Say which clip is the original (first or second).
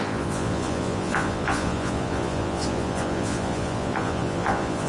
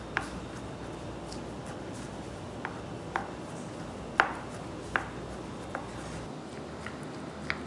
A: second